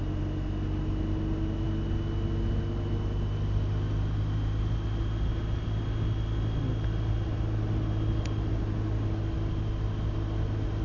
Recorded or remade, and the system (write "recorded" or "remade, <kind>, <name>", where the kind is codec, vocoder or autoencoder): recorded